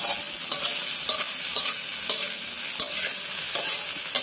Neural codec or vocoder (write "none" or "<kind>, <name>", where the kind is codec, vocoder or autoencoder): none